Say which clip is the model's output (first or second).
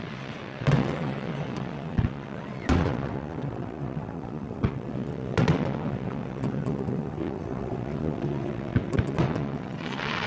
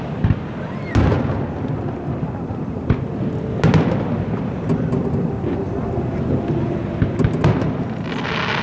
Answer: first